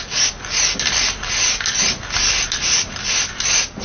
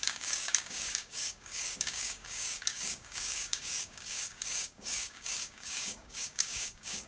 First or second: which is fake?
second